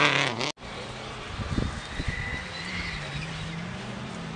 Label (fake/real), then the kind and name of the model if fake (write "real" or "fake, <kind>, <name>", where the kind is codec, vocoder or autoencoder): real